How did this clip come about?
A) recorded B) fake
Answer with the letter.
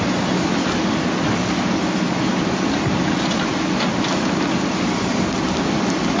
A